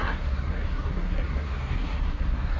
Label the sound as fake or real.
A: fake